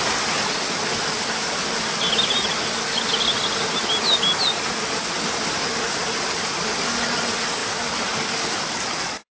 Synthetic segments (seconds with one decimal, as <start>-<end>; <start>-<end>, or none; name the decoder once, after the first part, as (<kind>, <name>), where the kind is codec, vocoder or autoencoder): none